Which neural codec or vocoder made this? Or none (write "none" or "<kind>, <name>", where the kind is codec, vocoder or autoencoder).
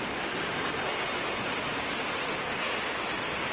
none